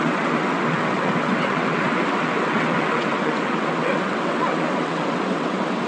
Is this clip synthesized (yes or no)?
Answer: yes